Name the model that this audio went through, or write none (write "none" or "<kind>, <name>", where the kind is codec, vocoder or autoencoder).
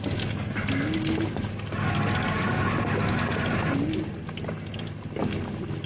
none